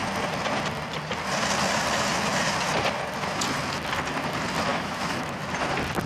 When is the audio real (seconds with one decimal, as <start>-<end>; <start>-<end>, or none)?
0.0-4.7; 5.4-6.1